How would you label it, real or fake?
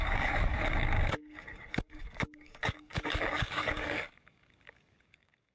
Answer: fake